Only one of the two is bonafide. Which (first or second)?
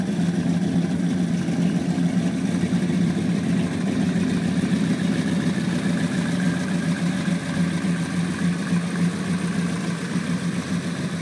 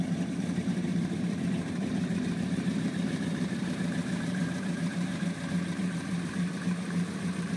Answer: first